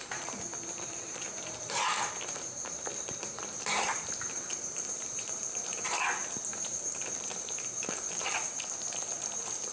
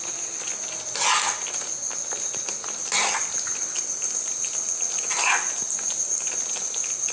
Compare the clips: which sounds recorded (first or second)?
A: second